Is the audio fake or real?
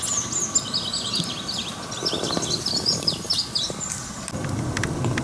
real